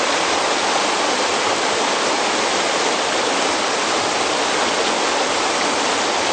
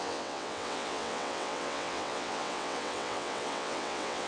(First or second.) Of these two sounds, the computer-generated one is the second